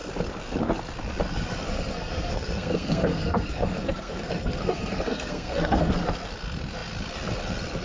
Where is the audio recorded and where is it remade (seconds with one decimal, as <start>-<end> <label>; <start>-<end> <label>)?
0.0-1.7 recorded; 1.7-5.9 remade; 5.9-7.8 recorded